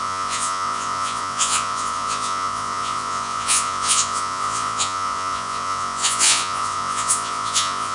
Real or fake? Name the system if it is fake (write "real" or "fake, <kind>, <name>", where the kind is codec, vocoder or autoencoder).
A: fake, vocoder, Vocos